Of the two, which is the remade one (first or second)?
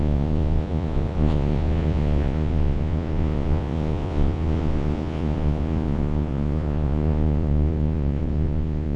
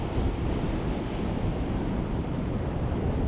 first